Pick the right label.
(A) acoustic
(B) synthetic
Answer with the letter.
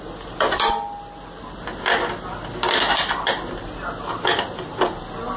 A